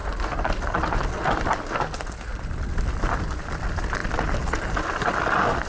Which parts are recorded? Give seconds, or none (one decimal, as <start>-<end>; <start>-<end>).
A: 0.0-5.7